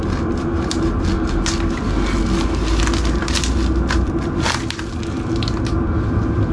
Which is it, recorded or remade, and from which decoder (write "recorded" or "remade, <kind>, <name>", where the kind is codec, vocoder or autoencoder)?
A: recorded